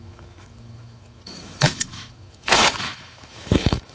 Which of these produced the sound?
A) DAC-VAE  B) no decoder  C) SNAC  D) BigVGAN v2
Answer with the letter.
A